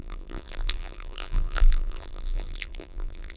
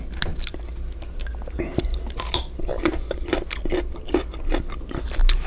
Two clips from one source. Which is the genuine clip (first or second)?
second